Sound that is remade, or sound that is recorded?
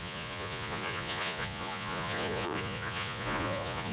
remade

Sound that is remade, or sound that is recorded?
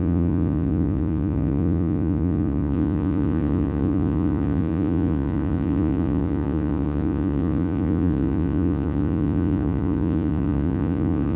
remade